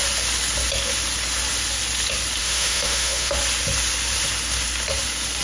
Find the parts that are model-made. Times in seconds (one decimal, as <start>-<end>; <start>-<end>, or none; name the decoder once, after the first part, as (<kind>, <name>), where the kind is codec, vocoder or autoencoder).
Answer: 2.4-3.3 (autoencoder, DAC-VAE)